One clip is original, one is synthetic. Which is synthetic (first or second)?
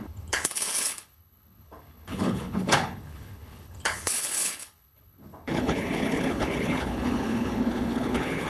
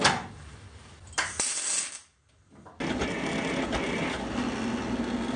first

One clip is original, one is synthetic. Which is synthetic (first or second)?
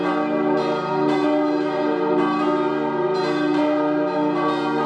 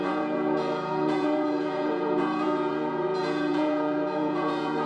second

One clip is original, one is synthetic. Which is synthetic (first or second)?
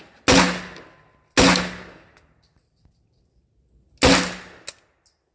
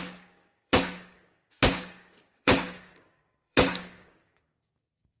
second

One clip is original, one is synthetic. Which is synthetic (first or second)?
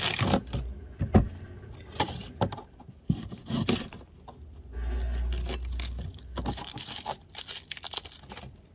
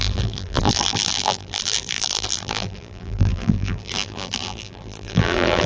second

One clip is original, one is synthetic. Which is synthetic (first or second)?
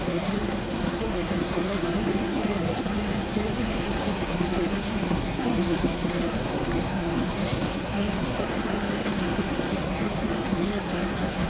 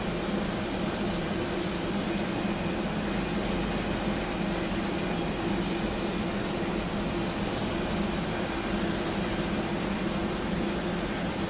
first